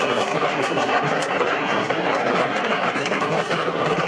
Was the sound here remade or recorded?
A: remade